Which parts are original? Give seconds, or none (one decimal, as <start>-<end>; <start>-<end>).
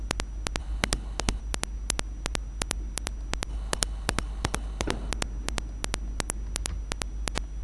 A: 0.0-0.6; 1.4-3.5; 5.1-7.6